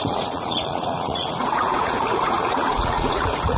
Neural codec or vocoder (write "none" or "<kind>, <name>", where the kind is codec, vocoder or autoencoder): vocoder, Vocos